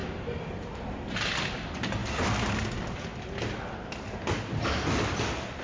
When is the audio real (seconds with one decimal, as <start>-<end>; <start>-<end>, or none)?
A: 0.0-5.6